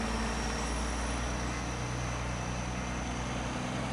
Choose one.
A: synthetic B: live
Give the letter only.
B